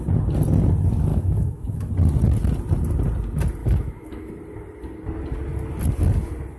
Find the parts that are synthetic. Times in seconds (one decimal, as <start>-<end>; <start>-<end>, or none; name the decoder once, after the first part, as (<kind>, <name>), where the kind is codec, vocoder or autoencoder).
1.1-1.9 (autoencoder, DAC-VAE); 3.6-4.3